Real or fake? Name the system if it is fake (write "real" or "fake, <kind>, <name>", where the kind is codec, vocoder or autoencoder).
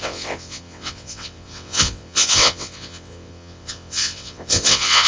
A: fake, vocoder, WaveNeXt